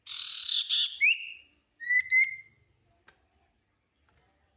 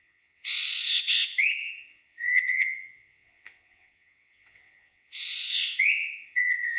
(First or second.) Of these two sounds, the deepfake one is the second